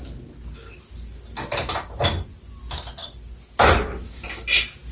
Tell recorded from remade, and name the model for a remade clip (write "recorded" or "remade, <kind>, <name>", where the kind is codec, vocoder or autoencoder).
recorded